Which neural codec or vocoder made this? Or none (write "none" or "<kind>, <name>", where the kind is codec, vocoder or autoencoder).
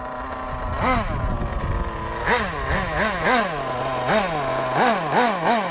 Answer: none